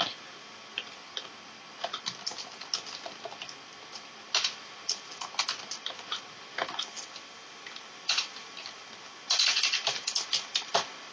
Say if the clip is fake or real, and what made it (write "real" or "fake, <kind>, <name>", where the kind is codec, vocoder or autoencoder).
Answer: real